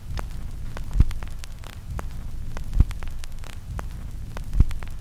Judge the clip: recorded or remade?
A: recorded